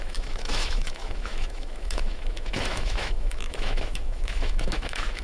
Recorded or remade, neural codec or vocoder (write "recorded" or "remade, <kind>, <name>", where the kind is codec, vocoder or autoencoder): remade, autoencoder, DAC-VAE